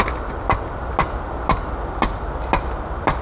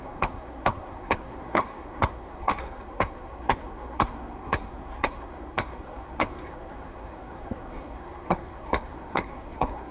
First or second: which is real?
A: first